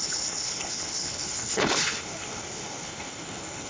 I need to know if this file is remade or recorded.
remade